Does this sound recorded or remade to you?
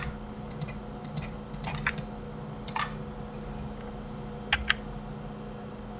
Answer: recorded